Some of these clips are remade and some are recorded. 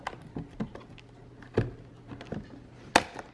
recorded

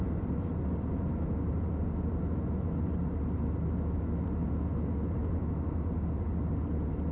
recorded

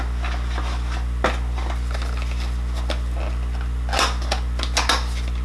recorded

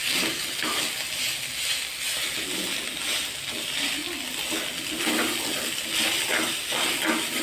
recorded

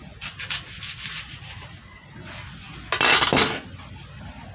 recorded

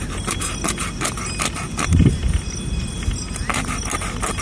recorded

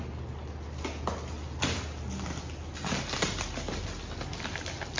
recorded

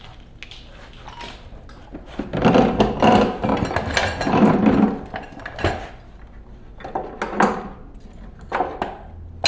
recorded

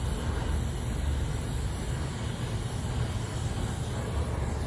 recorded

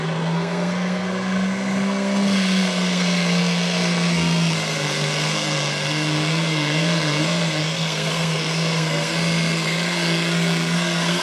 remade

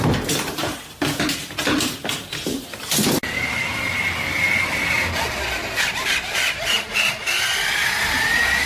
recorded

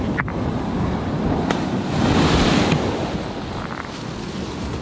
recorded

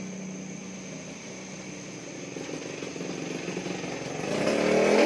recorded